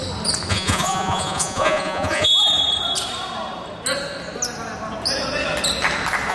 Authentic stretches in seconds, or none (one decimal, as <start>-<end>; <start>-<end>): 0.0-0.5; 2.3-6.3